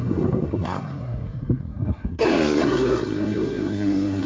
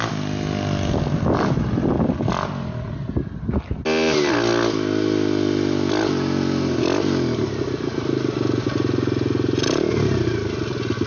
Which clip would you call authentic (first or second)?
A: second